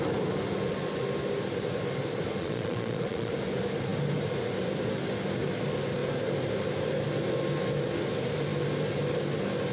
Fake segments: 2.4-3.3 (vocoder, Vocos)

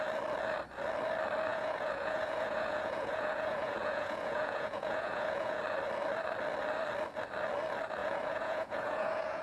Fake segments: 1.5-5.6 (vocoder, Vocos); 8.0-9.4

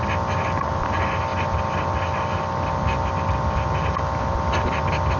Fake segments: none

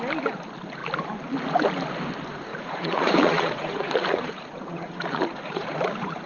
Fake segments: 2.5-6.3 (vocoder, Vocos)

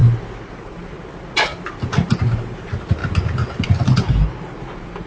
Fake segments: none